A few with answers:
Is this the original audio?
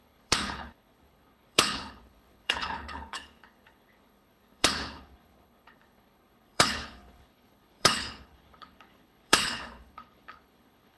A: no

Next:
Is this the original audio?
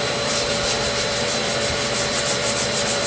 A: no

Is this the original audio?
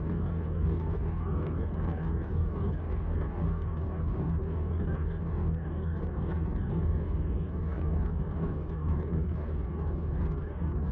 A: no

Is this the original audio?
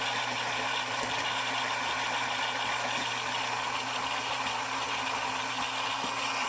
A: yes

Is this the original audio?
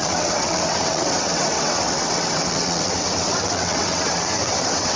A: no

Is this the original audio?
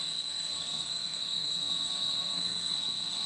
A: no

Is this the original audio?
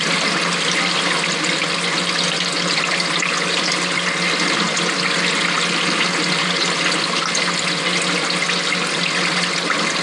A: yes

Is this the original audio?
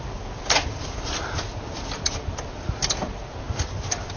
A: yes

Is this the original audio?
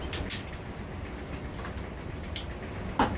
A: yes